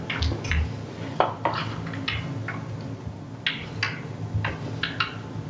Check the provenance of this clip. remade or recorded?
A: recorded